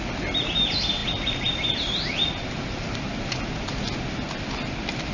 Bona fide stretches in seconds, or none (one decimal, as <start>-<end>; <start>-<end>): 0.0-5.1